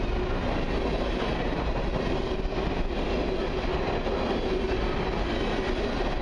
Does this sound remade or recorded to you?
recorded